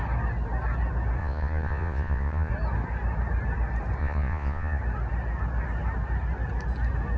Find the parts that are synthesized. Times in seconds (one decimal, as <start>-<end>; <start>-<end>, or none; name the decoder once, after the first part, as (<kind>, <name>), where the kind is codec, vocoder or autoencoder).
1.2-2.5 (vocoder, Vocos); 4.0-4.8